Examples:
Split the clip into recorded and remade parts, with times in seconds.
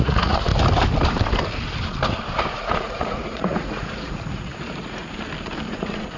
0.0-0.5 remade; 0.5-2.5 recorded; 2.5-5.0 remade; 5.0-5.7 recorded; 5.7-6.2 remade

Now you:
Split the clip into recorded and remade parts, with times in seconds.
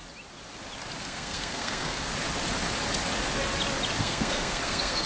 0.0-1.0 recorded; 1.0-2.1 remade; 2.1-4.0 recorded; 4.0-5.1 remade